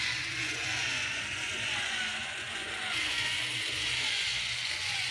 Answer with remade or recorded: remade